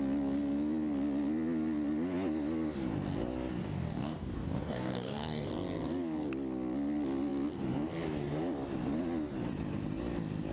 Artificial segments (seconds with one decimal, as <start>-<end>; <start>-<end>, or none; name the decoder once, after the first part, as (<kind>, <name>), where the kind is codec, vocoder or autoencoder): 3.6-5.5 (codec, DAC)